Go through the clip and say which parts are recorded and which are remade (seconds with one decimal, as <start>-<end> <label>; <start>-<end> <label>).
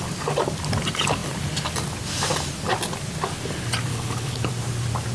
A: 0.0-3.9 recorded; 3.9-4.5 remade; 4.5-5.1 recorded